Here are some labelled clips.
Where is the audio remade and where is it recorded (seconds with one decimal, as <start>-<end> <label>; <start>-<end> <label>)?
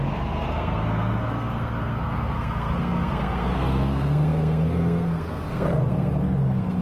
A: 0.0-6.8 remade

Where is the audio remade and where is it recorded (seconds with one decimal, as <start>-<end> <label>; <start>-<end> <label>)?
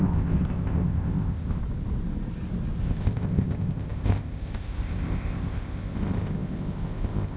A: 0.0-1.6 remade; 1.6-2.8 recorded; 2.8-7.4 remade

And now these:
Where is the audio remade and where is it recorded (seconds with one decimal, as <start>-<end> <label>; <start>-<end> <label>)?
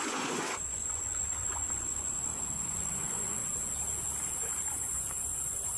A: 0.0-3.4 remade; 3.4-4.7 recorded; 4.7-5.8 remade